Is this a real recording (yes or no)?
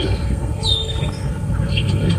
no